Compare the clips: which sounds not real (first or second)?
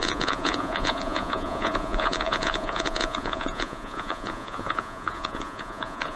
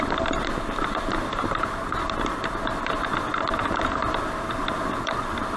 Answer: first